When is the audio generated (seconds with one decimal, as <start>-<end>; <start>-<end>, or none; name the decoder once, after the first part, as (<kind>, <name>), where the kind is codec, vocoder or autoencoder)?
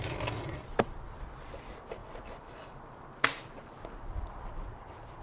none